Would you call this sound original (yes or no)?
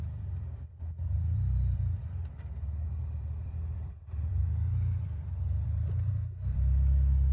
no